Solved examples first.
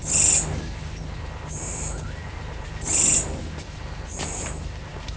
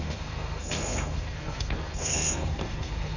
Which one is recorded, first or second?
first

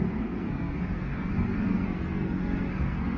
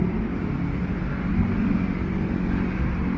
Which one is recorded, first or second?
second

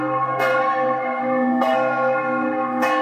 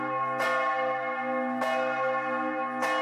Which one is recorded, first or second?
second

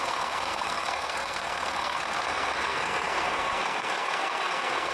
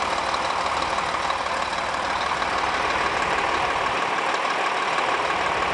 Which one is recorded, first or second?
second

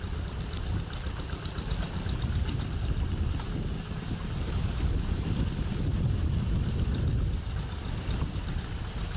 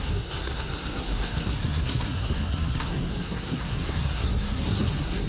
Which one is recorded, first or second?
first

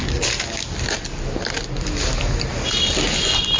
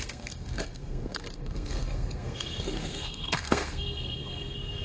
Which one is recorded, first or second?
first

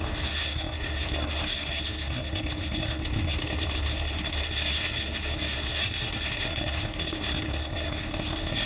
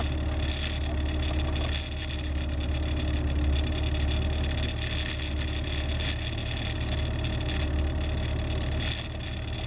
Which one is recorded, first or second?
second